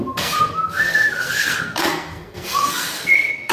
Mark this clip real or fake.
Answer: fake